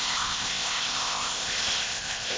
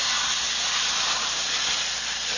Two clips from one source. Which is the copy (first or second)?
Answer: first